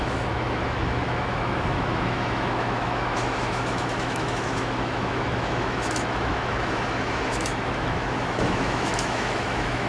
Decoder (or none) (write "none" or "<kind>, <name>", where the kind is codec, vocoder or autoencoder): autoencoder, DAC-VAE